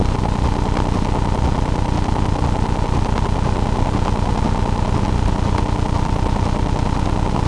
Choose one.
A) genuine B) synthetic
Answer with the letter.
A